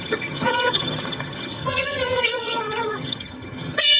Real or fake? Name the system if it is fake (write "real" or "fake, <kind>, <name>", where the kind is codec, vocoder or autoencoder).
fake, vocoder, HiFi-GAN